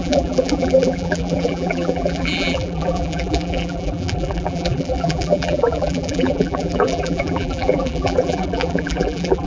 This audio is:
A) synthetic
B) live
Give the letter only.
A